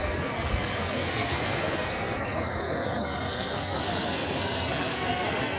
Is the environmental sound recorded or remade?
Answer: remade